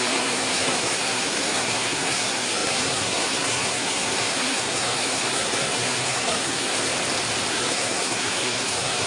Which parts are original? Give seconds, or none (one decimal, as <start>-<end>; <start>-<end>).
6.9-7.5